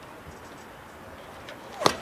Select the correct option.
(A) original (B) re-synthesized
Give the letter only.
A